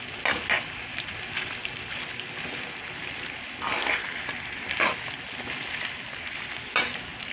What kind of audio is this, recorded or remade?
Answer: recorded